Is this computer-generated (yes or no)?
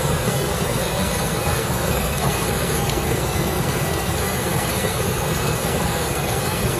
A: yes